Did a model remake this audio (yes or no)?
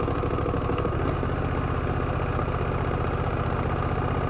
no